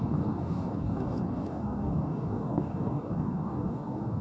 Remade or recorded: remade